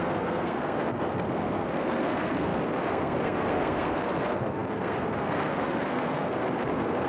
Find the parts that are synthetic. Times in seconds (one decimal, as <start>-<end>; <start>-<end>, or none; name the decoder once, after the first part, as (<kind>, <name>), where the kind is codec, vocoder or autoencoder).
0.0-7.1 (codec, SNAC)

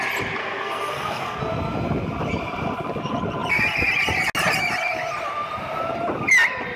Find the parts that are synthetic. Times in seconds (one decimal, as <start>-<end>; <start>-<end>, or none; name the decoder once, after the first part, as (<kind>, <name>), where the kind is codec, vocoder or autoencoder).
0.4-1.4 (codec, SNAC)

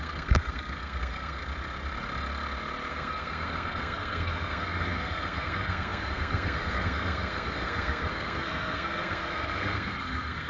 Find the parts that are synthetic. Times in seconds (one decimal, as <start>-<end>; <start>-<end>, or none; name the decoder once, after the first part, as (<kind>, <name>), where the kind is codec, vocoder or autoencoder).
0.0-1.4 (codec, SNAC); 2.9-10.5

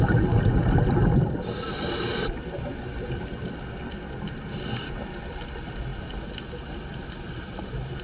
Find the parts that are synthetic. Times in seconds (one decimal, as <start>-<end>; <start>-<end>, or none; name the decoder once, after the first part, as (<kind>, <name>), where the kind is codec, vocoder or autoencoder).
none

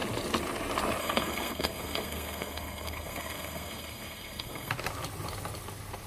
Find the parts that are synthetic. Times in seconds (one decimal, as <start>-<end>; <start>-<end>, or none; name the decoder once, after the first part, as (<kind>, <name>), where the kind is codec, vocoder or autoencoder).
1.0-4.7 (codec, SNAC)

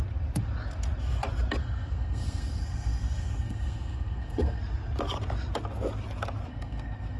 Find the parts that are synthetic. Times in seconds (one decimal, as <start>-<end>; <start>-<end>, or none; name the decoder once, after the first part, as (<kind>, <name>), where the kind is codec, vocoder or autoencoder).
1.6-4.6 (codec, SNAC); 6.5-7.2

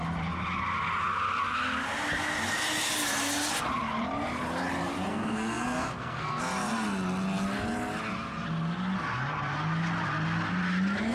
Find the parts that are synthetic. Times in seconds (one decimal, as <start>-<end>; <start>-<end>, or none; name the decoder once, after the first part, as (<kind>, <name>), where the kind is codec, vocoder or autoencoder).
5.1-6.4 (codec, SNAC)

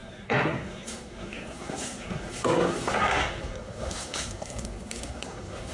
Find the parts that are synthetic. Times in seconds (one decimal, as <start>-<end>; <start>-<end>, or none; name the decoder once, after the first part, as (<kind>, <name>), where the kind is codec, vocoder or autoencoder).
0.0-5.7 (codec, SNAC)